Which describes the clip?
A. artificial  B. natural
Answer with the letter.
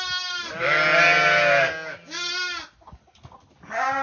B